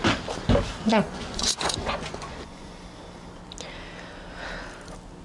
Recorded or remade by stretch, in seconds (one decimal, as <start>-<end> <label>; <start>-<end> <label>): 0.0-0.9 recorded; 0.9-2.8 remade; 2.8-5.2 recorded